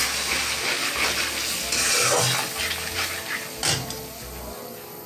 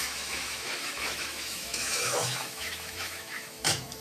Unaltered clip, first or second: first